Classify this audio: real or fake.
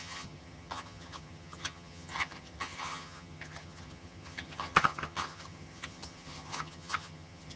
fake